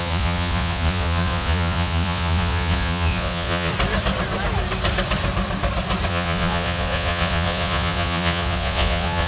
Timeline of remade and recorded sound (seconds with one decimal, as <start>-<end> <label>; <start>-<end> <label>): 0.0-3.7 remade; 3.7-6.1 recorded; 6.1-9.3 remade